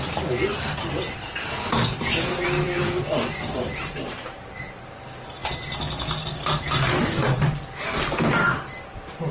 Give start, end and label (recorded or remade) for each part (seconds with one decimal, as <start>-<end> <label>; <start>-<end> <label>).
0.0-0.5 recorded; 0.5-4.8 remade; 4.8-9.3 recorded